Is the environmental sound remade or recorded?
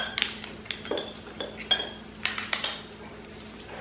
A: recorded